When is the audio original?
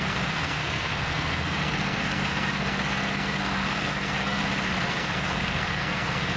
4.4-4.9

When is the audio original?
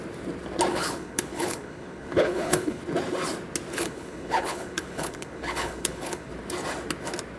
0.0-0.7; 2.8-3.7; 6.3-7.4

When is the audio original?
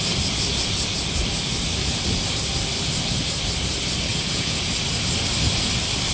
0.0-4.1; 4.7-6.1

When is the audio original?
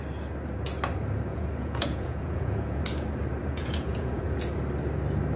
0.0-1.3; 2.8-3.4; 4.2-5.4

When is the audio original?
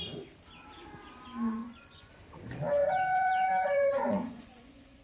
0.0-1.6; 2.1-2.8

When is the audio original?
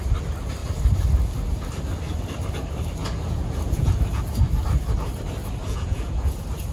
0.0-3.0; 3.9-5.6; 6.3-6.7